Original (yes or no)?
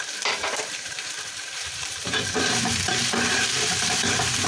no